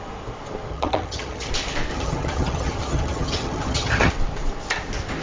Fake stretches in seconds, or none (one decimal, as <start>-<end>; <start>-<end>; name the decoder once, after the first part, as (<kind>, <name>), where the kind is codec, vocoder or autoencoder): 0.7-1.5 (vocoder, HiFi-GAN); 1.9-4.1